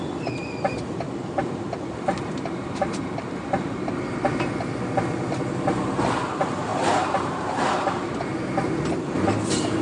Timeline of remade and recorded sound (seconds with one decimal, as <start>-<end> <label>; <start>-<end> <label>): 0.0-1.2 recorded; 1.2-3.9 remade; 3.9-6.7 recorded; 6.7-8.1 remade; 8.1-9.8 recorded